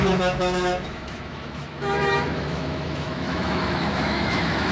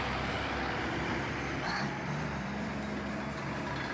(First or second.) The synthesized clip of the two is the first